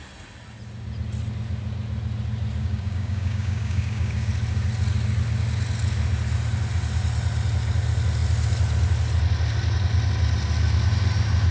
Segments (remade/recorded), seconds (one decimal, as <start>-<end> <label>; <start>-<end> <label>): 0.0-2.6 recorded; 2.6-4.3 remade; 4.3-11.5 recorded